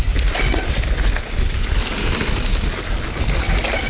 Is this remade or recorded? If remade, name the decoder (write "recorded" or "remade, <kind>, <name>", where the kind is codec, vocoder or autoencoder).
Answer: recorded